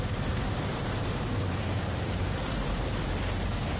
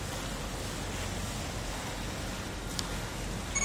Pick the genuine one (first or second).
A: second